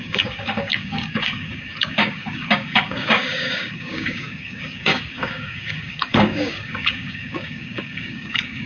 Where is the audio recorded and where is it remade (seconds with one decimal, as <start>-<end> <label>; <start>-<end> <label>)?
0.0-8.7 remade